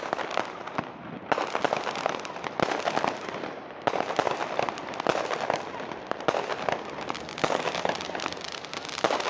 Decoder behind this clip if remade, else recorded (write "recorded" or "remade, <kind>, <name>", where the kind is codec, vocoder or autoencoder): recorded